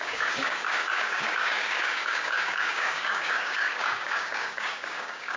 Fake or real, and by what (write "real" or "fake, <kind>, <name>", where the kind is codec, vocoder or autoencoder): fake, codec, DAC